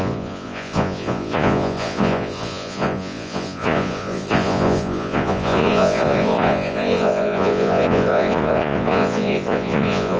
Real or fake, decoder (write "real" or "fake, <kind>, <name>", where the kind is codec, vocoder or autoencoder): fake, vocoder, Vocos